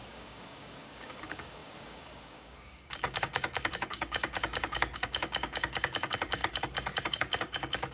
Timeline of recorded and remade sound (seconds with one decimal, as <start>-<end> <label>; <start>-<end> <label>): 0.0-6.4 remade; 6.4-7.1 recorded; 7.1-7.9 remade